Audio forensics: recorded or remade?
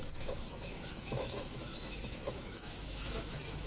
remade